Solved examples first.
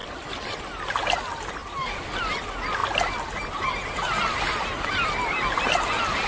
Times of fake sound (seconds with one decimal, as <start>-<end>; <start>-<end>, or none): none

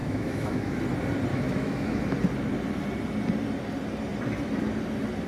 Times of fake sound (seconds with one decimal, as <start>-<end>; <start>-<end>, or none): 0.0-0.8; 1.3-2.0

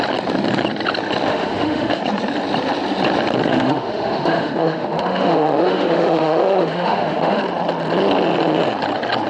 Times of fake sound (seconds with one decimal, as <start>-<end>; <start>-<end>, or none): 1.3-2.0; 3.5-7.4